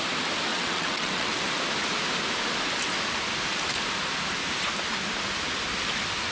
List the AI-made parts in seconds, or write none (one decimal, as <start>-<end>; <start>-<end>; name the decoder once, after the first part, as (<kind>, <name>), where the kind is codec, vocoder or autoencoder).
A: 0.5-1.4 (vocoder, WaveNeXt)